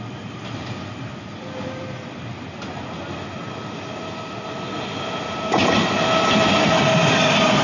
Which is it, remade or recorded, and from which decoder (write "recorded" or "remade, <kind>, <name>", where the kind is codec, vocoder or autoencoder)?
recorded